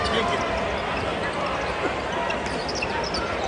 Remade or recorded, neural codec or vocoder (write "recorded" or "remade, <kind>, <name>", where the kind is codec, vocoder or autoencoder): recorded